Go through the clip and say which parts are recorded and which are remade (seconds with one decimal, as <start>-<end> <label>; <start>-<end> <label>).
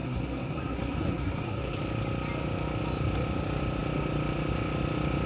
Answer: 0.0-1.8 remade; 1.8-5.3 recorded